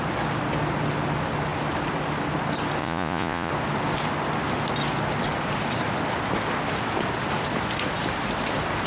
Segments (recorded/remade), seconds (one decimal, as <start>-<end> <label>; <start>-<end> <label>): 0.0-2.8 recorded; 2.8-3.5 remade; 3.5-8.9 recorded